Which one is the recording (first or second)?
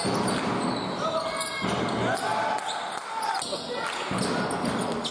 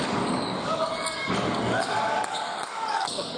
first